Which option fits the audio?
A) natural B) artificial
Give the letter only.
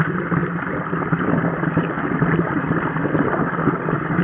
B